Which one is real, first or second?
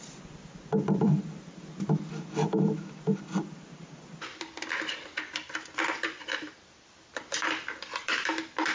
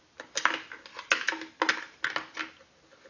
second